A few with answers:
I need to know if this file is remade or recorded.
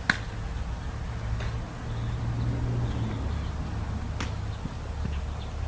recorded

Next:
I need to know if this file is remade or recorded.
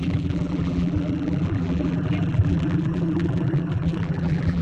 remade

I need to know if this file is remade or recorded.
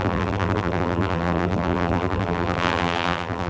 remade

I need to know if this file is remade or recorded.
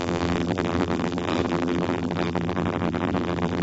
remade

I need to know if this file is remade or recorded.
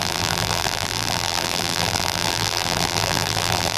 remade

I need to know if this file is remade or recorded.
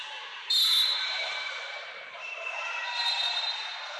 remade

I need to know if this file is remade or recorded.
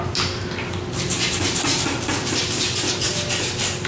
remade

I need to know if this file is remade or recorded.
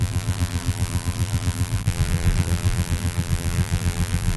remade